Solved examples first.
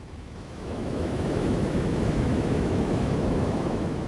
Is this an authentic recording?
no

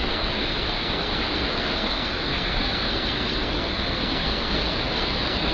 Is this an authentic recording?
no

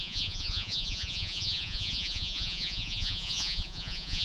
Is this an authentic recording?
no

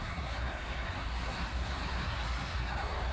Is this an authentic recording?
no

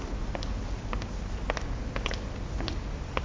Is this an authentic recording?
yes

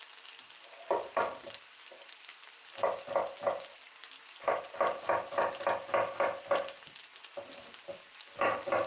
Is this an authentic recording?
yes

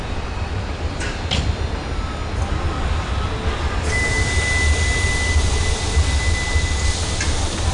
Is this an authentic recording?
yes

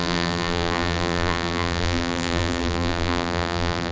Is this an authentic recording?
no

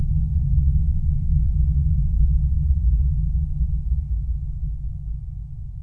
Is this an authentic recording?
yes